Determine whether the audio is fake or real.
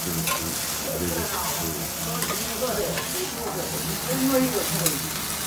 real